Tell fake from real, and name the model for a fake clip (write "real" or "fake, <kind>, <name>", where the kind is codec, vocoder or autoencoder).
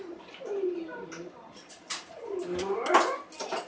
real